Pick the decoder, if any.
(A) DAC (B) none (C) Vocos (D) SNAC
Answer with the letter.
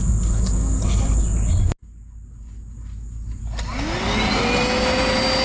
B